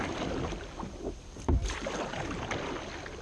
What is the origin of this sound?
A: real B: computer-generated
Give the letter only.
A